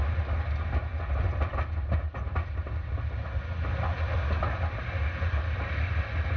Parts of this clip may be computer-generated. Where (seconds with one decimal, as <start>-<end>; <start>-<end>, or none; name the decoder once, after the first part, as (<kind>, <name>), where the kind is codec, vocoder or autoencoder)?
none